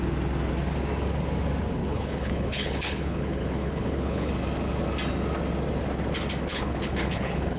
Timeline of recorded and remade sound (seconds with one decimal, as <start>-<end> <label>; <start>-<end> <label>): 0.0-1.8 recorded; 1.8-4.3 remade; 4.3-6.5 recorded; 6.5-7.6 remade